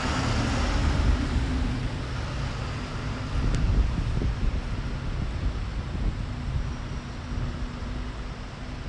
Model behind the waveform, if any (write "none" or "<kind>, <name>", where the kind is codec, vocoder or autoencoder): none